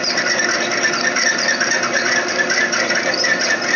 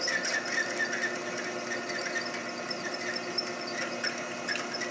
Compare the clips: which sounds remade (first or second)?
first